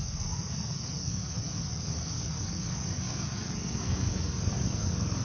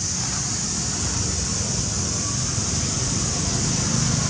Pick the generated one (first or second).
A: first